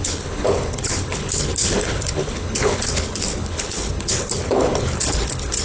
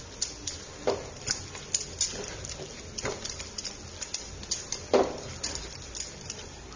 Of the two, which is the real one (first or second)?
second